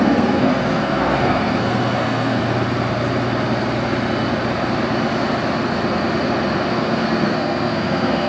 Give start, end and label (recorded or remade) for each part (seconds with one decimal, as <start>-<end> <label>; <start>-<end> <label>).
0.0-2.4 remade; 2.4-6.7 recorded; 6.7-8.3 remade